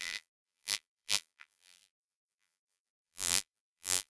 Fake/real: fake